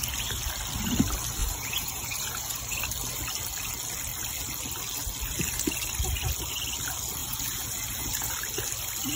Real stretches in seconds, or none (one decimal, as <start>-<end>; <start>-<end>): 0.0-1.4; 2.6-7.2; 8.3-9.2